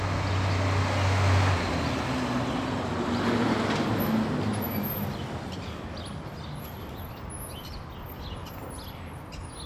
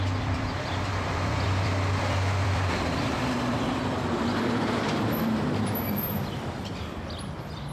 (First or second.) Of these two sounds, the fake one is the second